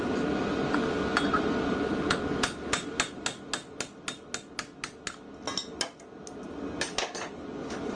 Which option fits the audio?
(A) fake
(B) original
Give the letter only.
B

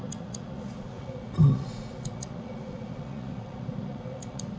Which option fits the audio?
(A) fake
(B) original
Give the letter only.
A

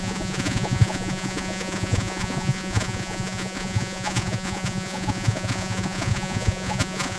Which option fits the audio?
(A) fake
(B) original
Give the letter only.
A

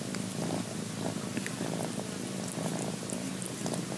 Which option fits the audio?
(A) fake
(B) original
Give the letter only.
B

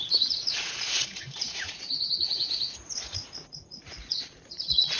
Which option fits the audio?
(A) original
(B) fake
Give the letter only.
B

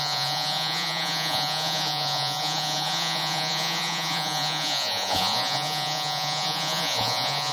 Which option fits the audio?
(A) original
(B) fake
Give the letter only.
B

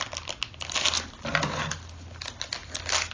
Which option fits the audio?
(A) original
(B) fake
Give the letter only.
A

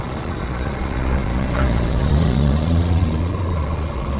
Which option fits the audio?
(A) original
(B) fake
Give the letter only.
B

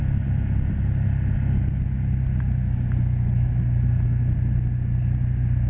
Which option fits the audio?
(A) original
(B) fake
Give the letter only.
A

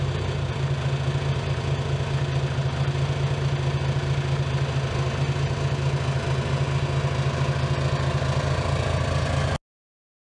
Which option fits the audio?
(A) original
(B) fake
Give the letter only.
A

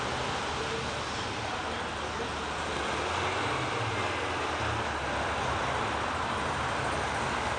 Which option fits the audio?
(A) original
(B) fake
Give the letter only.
A